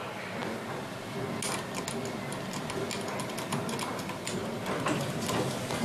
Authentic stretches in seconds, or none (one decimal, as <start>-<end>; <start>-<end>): 0.0-5.8